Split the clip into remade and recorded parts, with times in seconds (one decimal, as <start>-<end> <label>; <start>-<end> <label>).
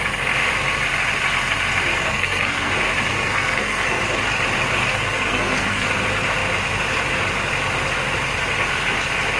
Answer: 0.0-1.9 recorded; 1.9-2.7 remade; 2.7-3.1 recorded; 3.1-4.0 remade; 4.0-4.8 recorded; 4.8-5.9 remade; 5.9-9.4 recorded